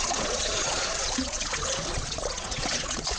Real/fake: fake